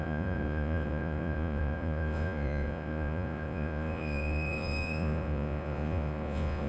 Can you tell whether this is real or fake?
fake